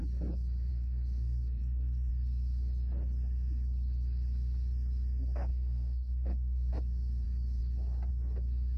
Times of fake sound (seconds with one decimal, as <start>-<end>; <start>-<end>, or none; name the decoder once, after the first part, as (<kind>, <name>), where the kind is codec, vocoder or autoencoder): 0.7-2.1 (codec, SNAC); 5.5-6.7